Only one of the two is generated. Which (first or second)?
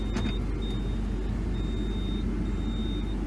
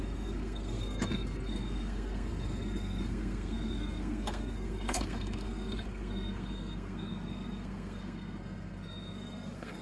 second